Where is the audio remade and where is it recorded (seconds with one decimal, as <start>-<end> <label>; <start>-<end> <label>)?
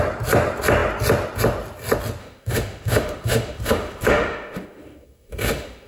0.0-2.2 recorded; 2.2-5.9 remade